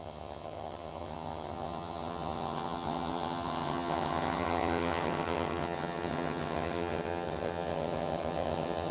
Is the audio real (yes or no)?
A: no